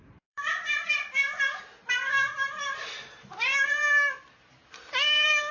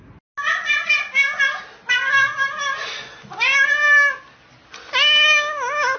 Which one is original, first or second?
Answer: second